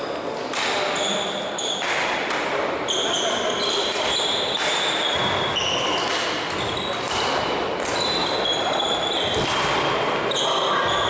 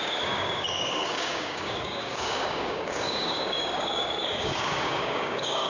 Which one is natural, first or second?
first